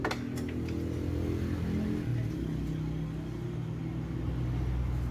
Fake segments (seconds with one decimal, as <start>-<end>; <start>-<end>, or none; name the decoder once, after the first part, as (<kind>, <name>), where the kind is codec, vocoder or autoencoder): none